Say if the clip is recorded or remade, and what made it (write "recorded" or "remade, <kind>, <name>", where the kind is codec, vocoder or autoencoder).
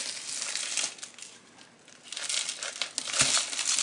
recorded